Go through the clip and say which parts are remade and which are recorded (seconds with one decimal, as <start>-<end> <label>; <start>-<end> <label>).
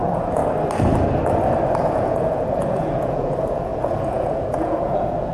0.0-0.4 remade; 0.4-1.8 recorded; 1.8-5.3 remade